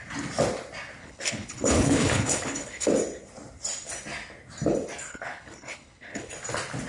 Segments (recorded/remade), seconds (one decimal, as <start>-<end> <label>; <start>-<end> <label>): 0.0-1.0 recorded; 1.0-2.9 remade; 2.9-5.1 recorded; 5.1-6.3 remade; 6.3-6.9 recorded